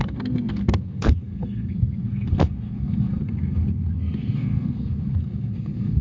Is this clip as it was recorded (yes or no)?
no